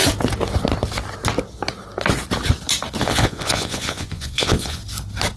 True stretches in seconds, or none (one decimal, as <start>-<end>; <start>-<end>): 0.0-3.0; 4.8-5.4

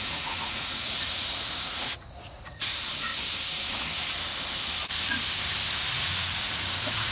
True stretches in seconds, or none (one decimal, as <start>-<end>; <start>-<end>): 3.1-5.9

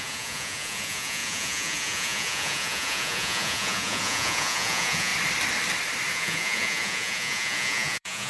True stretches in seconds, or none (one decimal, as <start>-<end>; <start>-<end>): 5.1-6.1

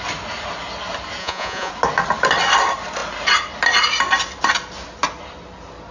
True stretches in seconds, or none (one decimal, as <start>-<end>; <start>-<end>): 0.0-1.2; 1.7-5.9

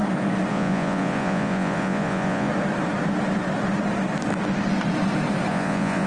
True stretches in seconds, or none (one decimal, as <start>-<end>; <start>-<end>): 0.0-0.5; 2.5-5.5

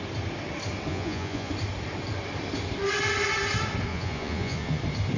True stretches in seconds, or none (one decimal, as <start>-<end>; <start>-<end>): 0.0-0.9; 1.5-3.9; 4.8-5.2

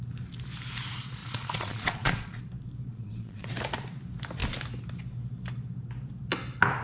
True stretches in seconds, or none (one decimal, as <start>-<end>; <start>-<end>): 0.0-1.2; 2.4-2.9; 3.5-6.8

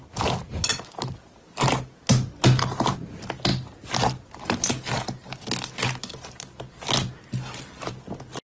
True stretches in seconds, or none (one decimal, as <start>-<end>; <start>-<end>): 0.0-8.6